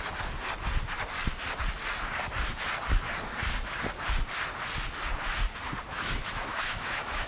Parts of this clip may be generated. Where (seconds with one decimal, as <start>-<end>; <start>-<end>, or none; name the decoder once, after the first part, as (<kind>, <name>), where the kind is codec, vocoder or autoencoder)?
5.9-7.3 (autoencoder, DAC-VAE)